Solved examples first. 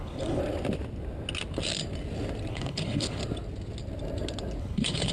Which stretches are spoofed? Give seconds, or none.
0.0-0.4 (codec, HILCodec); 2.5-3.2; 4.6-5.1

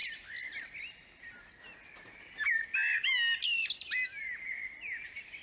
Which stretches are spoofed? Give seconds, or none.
none

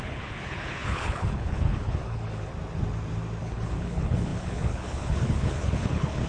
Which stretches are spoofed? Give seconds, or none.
0.0-2.5 (codec, HILCodec); 3.4-6.3